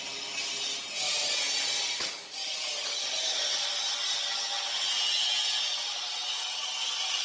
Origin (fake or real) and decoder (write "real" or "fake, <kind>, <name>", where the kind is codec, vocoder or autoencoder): real